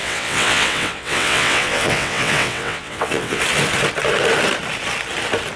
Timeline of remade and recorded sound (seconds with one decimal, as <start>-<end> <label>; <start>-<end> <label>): 0.0-3.4 remade; 3.4-5.6 recorded